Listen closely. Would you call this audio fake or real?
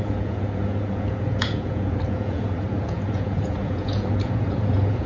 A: fake